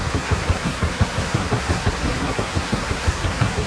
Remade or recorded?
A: remade